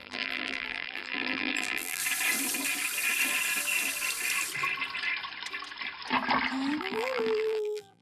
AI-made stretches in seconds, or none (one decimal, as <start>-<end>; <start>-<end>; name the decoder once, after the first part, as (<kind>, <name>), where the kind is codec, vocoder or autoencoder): 0.0-2.0 (vocoder, BigVGAN v2); 6.8-8.0